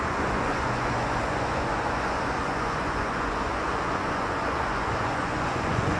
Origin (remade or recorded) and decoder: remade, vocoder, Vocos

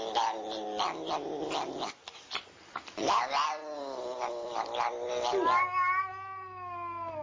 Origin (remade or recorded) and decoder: recorded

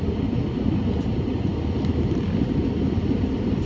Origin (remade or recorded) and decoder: recorded